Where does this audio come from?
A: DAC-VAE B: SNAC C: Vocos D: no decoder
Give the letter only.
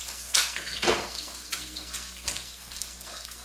B